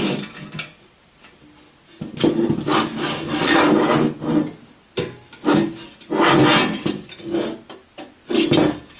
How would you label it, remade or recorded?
recorded